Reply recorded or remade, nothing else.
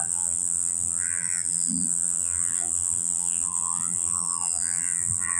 remade